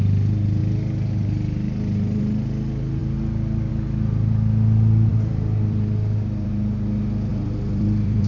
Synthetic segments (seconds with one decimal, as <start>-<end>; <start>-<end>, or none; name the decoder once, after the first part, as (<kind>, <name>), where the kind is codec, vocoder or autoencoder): 5.1-6.5 (vocoder, BigVGAN v2); 7.3-8.3